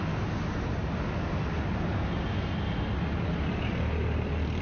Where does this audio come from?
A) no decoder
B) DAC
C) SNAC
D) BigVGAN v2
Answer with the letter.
A